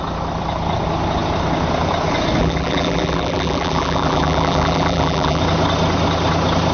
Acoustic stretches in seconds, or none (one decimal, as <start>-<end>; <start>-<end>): 0.0-2.4; 5.4-6.7